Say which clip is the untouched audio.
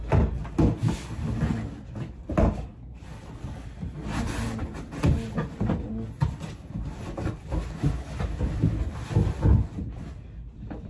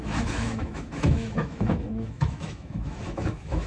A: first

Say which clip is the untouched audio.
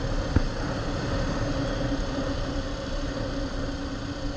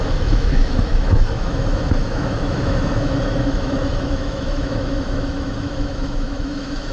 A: first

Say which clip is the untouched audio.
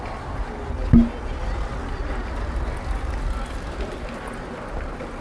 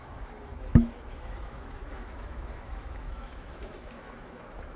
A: first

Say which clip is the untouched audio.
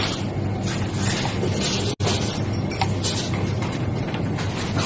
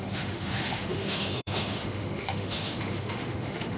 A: first